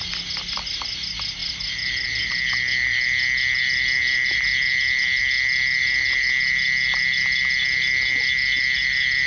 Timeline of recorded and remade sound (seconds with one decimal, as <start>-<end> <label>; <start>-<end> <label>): 0.0-1.4 recorded; 1.4-2.3 remade; 2.3-4.0 recorded; 4.0-5.2 remade; 5.2-5.8 recorded; 5.8-6.3 remade; 6.3-9.3 recorded